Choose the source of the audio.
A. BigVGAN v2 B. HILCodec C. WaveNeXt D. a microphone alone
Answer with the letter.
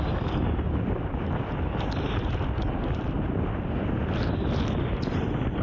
D